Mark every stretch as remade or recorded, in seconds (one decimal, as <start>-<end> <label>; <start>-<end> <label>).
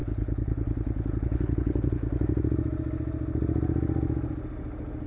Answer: 0.0-2.0 remade; 2.0-5.1 recorded